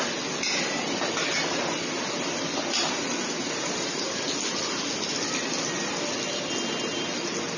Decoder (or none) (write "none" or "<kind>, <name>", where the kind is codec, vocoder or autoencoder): none